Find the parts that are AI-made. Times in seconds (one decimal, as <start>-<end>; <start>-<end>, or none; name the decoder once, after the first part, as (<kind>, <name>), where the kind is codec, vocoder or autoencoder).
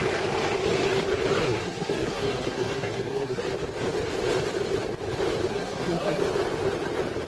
1.4-3.4 (codec, SNAC); 5.5-6.2